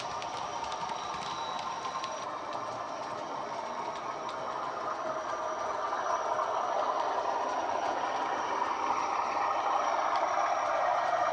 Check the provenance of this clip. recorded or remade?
remade